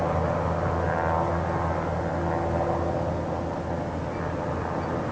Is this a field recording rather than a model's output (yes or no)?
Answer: yes